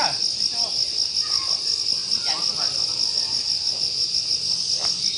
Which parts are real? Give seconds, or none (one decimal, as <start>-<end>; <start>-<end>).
0.0-2.0; 4.2-5.2